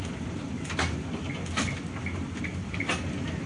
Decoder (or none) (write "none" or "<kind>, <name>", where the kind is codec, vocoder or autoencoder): none